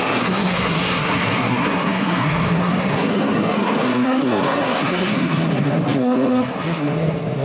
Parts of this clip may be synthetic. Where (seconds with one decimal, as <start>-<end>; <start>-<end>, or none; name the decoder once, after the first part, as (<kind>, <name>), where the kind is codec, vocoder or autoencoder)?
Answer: 0.0-7.4 (codec, SNAC)